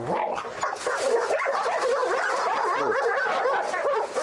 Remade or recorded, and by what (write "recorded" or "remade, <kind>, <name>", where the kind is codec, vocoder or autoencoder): recorded